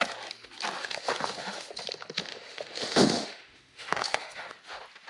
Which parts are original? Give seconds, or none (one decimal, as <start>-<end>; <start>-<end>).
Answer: 0.0-0.8; 1.7-2.3; 4.5-5.1